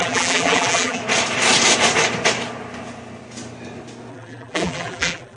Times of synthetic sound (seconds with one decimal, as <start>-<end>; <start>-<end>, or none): 0.0-1.0; 4.1-5.4